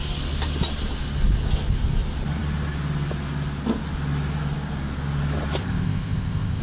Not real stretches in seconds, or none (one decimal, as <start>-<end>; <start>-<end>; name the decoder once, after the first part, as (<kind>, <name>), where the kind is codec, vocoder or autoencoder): 5.6-6.6 (codec, ZipCodec)